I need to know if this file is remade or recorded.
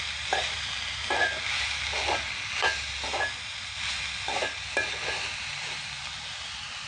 recorded